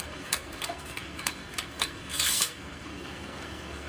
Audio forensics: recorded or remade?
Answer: remade